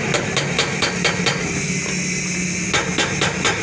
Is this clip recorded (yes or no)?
yes